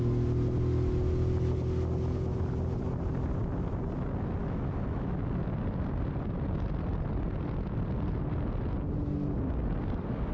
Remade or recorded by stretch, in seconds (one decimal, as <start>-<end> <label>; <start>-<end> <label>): 0.0-4.4 recorded; 4.4-5.2 remade; 5.2-10.3 recorded